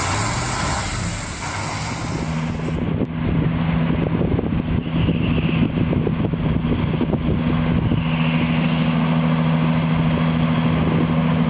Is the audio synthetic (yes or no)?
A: no